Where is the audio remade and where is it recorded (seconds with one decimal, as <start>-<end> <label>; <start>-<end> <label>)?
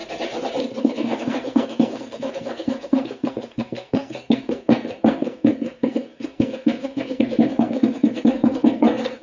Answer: 0.0-0.8 recorded; 0.8-9.2 remade